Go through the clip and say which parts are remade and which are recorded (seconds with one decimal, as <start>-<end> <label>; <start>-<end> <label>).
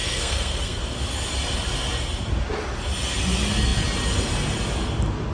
0.0-0.8 remade; 0.8-5.3 recorded